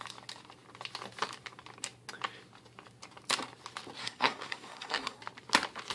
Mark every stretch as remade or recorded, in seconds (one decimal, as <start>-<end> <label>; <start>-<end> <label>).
0.0-4.0 recorded; 4.0-5.2 remade; 5.2-5.9 recorded